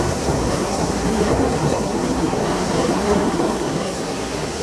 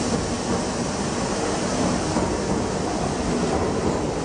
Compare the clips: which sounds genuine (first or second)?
second